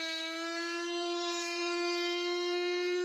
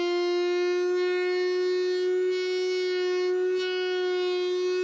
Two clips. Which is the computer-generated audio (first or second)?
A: first